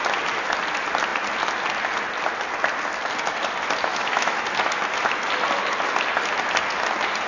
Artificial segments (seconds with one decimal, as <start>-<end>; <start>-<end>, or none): 3.9-4.4